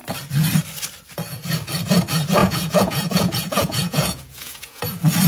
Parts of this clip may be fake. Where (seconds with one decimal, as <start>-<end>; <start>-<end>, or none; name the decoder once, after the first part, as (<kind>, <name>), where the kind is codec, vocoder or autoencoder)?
2.4-4.8 (vocoder, Vocos)